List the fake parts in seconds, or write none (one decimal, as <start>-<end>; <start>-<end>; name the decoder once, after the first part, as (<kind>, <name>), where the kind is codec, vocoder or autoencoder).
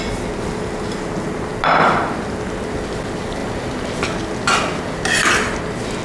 none